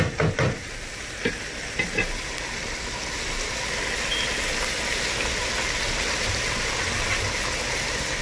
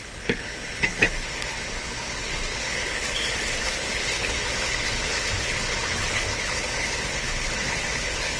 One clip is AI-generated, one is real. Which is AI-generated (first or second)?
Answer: second